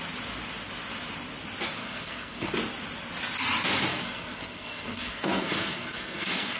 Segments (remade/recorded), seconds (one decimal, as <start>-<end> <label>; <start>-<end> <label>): 0.0-1.8 recorded; 1.8-2.5 remade; 2.5-3.9 recorded; 3.9-6.6 remade